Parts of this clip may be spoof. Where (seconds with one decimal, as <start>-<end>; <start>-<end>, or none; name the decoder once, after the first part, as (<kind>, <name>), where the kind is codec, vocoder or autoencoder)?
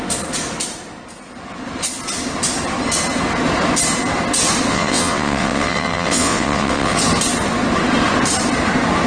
4.7-7.0 (vocoder, WaveNeXt)